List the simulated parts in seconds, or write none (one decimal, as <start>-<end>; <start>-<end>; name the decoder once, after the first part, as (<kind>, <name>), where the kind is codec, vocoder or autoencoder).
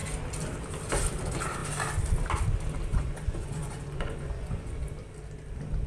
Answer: 2.9-4.9 (vocoder, Vocos)